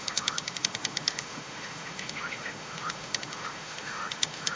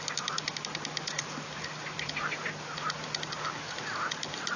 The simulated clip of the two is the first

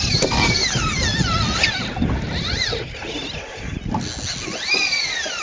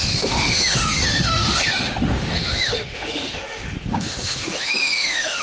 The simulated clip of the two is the second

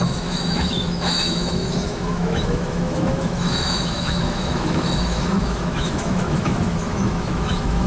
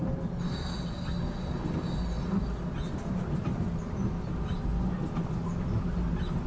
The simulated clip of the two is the first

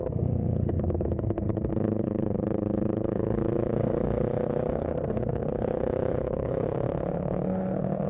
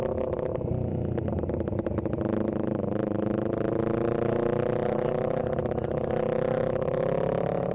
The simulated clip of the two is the first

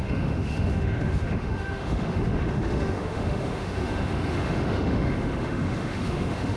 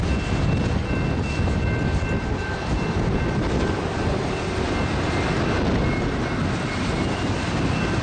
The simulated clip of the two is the first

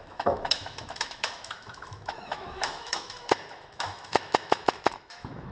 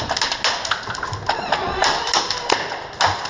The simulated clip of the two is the first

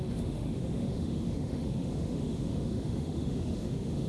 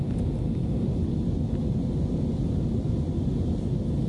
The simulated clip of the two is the first